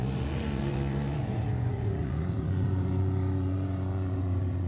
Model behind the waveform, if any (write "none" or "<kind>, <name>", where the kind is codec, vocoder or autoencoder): vocoder, Vocos